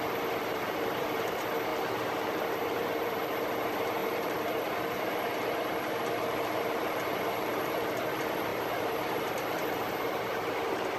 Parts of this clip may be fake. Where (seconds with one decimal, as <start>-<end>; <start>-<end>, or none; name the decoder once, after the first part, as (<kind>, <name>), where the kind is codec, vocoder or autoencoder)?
0.0-1.7 (vocoder, BigVGAN v2); 2.3-11.0